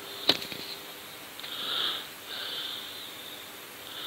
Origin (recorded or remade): remade